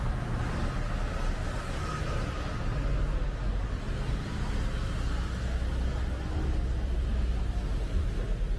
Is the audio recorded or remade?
recorded